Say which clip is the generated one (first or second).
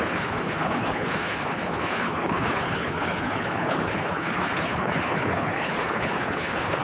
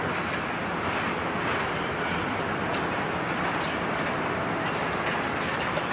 first